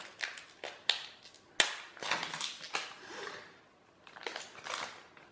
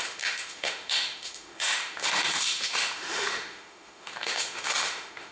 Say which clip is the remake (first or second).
second